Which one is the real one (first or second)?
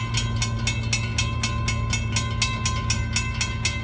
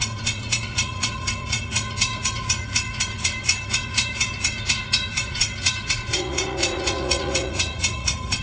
first